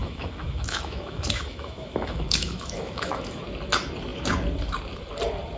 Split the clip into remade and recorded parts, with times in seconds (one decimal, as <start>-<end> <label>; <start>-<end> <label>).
0.0-3.4 remade; 3.4-5.6 recorded